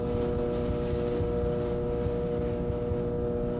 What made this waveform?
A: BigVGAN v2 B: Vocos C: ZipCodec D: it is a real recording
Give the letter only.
D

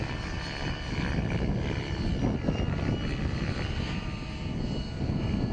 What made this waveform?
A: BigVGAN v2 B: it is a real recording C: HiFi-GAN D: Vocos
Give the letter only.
B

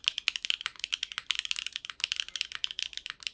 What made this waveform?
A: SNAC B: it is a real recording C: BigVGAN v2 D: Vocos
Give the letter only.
B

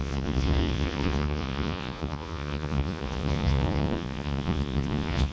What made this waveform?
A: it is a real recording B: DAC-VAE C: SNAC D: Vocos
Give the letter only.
D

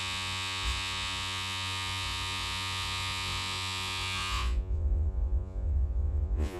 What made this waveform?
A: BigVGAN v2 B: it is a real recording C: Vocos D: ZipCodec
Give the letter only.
C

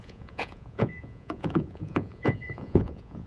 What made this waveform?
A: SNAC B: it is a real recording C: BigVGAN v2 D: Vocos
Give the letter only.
D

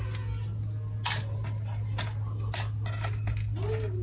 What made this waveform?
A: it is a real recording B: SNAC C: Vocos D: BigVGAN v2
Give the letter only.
A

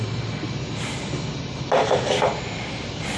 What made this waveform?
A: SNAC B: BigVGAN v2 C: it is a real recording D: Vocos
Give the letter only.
C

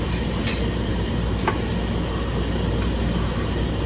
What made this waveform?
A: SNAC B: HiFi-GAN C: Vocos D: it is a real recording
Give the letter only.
D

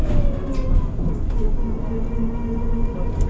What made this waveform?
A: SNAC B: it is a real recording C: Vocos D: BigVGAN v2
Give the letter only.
B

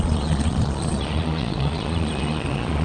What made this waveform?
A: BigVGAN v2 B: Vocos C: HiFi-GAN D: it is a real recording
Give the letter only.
B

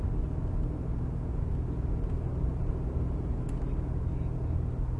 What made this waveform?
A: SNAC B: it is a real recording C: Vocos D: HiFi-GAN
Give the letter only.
B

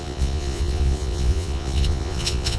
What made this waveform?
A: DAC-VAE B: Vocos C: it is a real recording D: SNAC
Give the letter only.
B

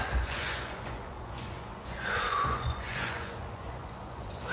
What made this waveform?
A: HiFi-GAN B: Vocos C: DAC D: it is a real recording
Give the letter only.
B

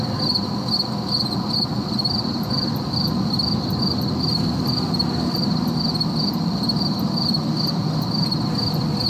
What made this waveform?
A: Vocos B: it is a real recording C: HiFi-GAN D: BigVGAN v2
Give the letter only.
B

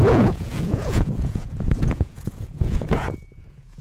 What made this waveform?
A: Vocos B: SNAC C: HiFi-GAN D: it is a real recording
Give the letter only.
A